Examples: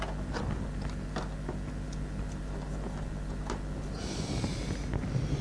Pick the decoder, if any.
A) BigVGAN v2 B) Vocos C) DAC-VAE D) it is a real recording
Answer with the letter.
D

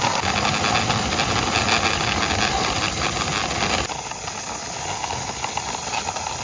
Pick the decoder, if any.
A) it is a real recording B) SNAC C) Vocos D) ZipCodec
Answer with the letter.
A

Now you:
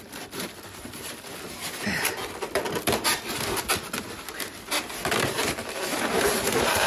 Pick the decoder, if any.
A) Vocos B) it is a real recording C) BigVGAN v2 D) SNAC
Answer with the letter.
C